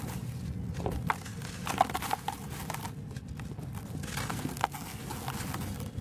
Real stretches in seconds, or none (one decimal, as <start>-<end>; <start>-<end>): 0.0-4.3; 5.0-6.0